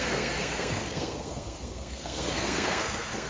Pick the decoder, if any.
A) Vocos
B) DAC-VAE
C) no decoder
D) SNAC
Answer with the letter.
D